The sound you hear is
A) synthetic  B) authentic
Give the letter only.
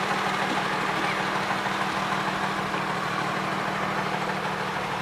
B